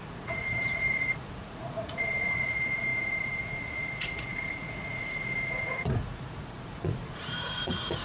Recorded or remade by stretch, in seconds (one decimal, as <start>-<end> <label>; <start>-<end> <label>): 0.0-8.0 remade